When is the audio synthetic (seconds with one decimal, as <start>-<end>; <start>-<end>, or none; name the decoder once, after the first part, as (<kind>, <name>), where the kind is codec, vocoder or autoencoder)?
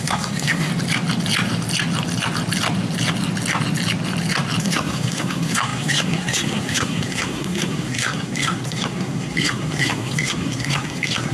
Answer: 0.0-0.7 (codec, SNAC); 4.6-11.3